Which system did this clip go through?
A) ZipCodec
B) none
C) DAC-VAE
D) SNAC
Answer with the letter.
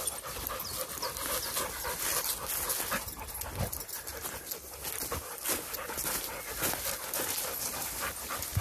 B